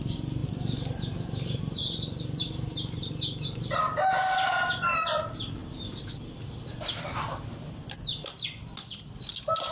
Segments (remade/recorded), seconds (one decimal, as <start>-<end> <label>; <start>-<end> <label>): 0.0-0.4 recorded; 0.4-3.8 remade; 3.8-5.6 recorded; 5.6-6.1 remade; 6.1-9.7 recorded